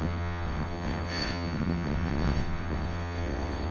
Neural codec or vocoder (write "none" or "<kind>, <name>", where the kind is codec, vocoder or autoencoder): vocoder, WaveNeXt